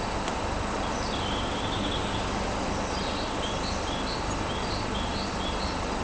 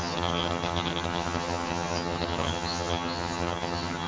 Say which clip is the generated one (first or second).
second